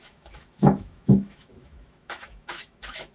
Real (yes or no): no